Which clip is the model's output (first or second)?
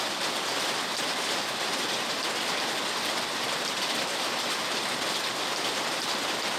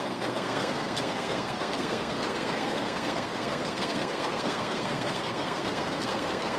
second